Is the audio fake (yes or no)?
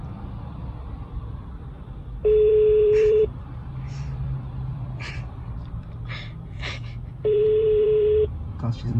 yes